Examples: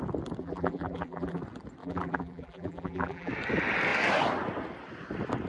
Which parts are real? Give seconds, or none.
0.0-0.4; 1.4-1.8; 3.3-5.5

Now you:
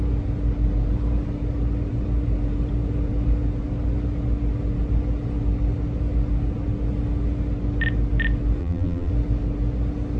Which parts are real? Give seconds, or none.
0.0-8.6; 9.1-10.2